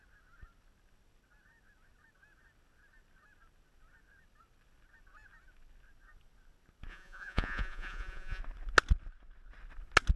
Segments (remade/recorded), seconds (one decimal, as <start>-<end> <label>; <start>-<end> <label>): 0.0-6.9 recorded; 6.9-8.4 remade; 8.4-10.2 recorded